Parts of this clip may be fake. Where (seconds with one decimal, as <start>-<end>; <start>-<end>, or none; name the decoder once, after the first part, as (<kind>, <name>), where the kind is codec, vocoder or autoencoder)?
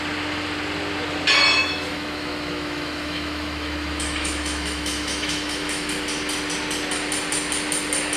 1.6-5.9 (autoencoder, DAC-VAE)